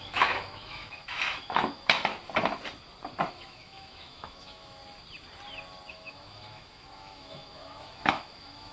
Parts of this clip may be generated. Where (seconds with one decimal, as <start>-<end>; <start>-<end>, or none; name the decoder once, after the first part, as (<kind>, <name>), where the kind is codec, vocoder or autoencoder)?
0.0-2.1 (autoencoder, DAC-VAE); 3.3-4.8; 5.9-8.7